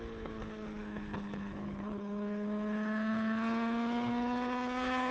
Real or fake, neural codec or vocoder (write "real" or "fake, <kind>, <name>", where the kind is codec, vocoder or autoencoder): fake, codec, HILCodec